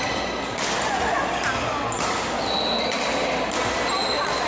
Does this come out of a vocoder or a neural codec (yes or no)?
no